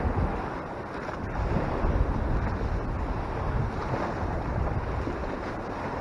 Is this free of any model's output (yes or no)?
yes